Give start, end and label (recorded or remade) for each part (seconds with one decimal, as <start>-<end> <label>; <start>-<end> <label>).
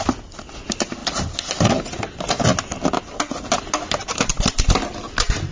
0.0-5.5 recorded